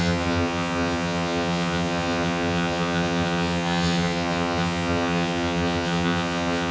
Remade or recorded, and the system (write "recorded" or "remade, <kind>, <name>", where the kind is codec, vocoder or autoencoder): remade, vocoder, HiFi-GAN